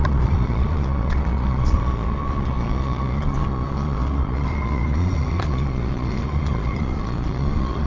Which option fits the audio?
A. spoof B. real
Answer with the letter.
A